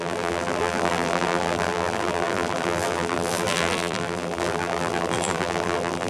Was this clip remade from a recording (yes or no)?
yes